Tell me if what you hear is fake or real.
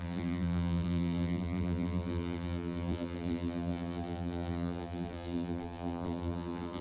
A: fake